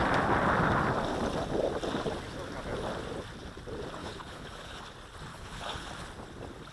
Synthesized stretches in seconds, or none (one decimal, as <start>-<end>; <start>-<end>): 4.0-4.8; 5.3-5.9